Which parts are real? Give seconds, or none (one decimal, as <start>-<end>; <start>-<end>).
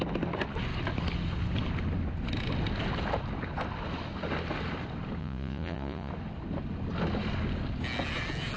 0.0-5.2; 6.1-8.6